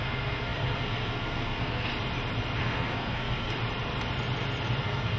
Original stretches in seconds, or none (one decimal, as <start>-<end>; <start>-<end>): 1.9-2.6; 3.6-4.8